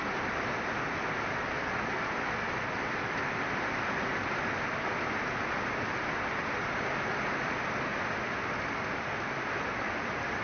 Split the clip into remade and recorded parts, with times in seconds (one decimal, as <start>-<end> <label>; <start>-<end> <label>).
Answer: 0.0-10.4 recorded